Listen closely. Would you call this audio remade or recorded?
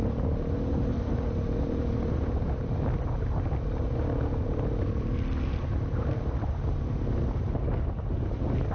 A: recorded